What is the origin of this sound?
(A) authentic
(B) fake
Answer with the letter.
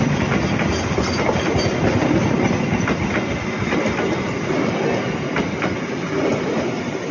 A